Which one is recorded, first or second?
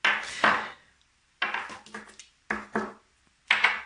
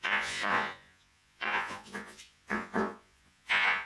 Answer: first